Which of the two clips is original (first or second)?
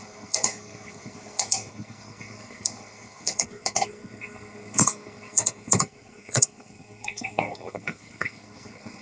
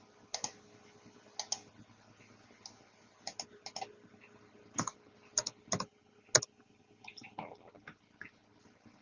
second